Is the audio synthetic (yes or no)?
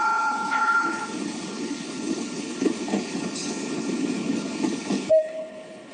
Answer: yes